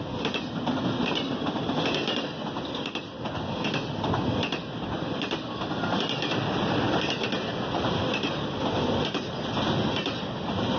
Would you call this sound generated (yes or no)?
no